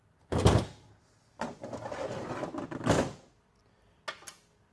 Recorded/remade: recorded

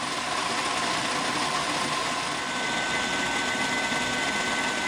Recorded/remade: recorded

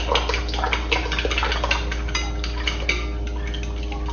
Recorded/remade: recorded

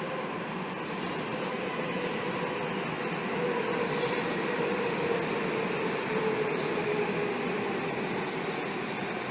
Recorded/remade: recorded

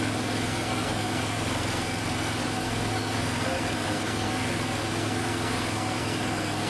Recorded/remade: remade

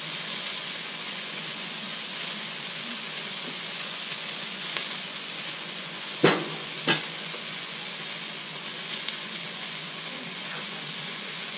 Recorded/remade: remade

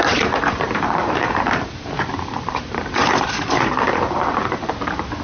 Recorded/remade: remade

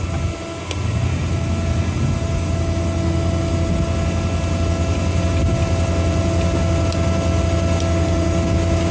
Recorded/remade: recorded